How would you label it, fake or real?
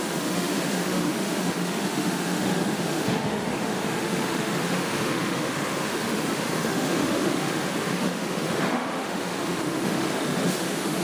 fake